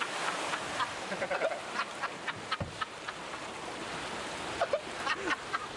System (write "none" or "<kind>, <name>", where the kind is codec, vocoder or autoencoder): vocoder, BigVGAN v2